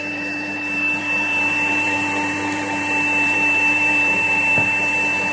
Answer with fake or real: fake